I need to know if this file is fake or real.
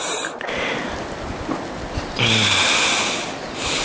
real